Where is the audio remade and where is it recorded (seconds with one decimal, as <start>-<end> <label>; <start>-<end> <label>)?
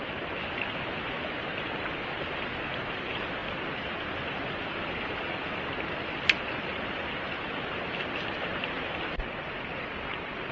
0.0-10.5 recorded